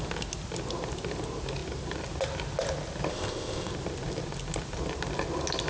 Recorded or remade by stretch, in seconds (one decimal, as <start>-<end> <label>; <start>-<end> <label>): 0.0-3.1 recorded; 3.1-3.7 remade; 3.7-5.7 recorded

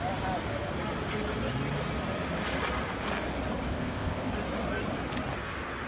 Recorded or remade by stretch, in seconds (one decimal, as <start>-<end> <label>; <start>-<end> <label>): 0.0-3.7 recorded; 3.7-4.3 remade; 4.3-5.9 recorded

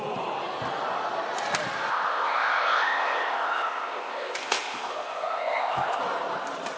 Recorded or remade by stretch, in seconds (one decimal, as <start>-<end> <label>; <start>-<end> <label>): 0.0-1.9 recorded; 1.9-6.0 remade; 6.0-6.8 recorded

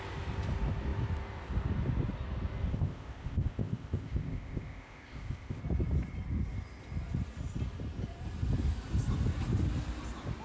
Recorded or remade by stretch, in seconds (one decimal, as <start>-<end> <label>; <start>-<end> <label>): 0.0-2.7 recorded; 2.7-5.6 remade; 5.6-10.4 recorded

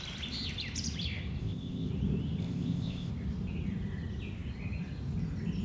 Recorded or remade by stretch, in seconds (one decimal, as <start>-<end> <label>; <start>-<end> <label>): 0.0-1.4 recorded; 1.4-1.9 remade; 1.9-2.4 recorded; 2.4-3.1 remade; 3.1-5.6 recorded

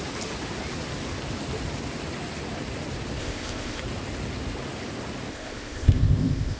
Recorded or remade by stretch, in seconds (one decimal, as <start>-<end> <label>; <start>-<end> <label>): 0.0-3.2 recorded; 3.2-3.8 remade; 3.8-5.3 recorded; 5.3-6.6 remade